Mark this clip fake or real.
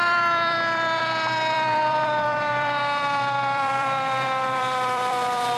fake